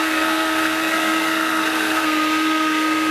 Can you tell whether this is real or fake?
fake